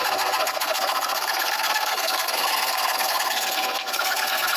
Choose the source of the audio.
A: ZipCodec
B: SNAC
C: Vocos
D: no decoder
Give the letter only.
B